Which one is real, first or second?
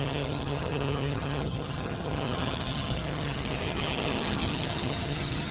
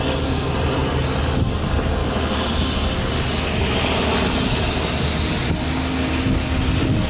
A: second